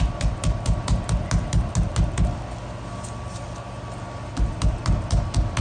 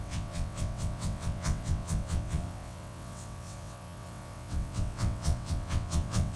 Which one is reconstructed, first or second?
second